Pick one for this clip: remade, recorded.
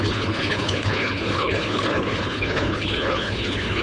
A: remade